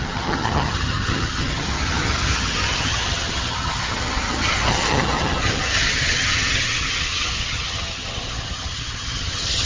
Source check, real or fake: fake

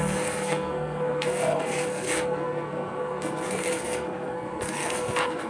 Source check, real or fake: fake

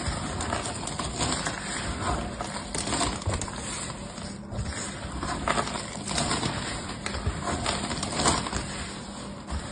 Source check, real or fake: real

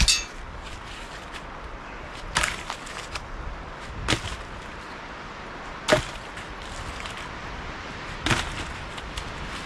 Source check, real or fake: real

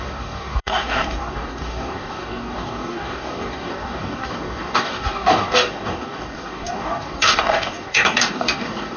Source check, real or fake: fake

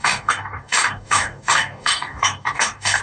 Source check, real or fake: fake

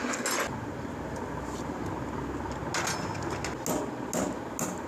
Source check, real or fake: real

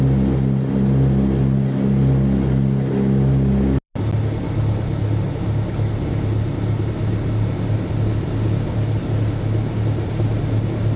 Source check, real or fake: real